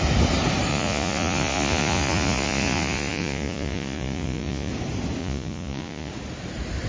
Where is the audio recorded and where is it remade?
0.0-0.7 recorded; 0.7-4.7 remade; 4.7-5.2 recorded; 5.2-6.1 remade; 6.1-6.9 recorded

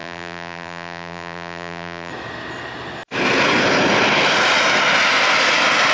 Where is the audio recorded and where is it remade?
0.0-2.1 remade; 2.1-5.9 recorded

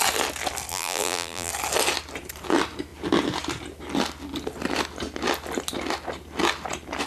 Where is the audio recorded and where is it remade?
0.0-0.7 recorded; 0.7-1.5 remade; 1.5-7.1 recorded

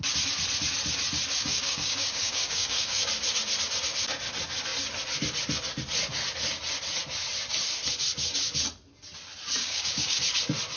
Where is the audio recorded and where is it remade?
0.0-1.4 recorded; 1.4-3.1 remade; 3.1-9.6 recorded; 9.6-10.2 remade; 10.2-10.8 recorded

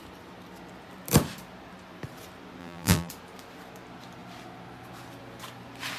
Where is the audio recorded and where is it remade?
0.0-2.6 recorded; 2.6-3.1 remade; 3.1-6.0 recorded

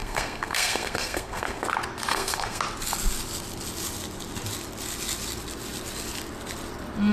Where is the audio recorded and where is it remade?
0.0-1.6 remade; 1.6-2.1 recorded; 2.1-2.6 remade; 2.6-7.1 recorded

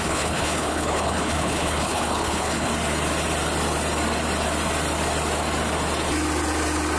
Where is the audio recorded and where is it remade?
0.0-2.7 remade; 2.7-7.0 recorded